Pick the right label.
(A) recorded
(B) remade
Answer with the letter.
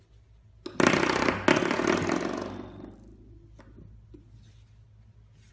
A